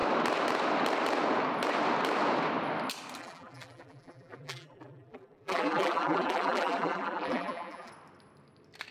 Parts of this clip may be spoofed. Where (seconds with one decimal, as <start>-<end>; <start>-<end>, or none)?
3.2-7.9